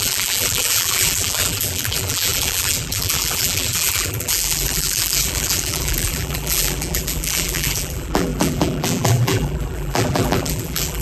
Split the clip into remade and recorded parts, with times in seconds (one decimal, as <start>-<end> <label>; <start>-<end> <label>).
0.0-11.0 remade